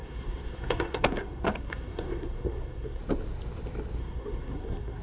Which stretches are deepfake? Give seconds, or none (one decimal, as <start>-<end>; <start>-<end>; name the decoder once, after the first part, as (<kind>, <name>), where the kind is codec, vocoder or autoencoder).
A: 0.0-3.0 (codec, SNAC); 4.0-5.0